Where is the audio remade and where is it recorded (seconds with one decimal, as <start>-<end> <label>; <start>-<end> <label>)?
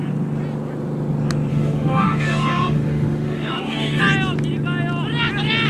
0.0-1.5 recorded; 1.5-4.0 remade; 4.0-5.7 recorded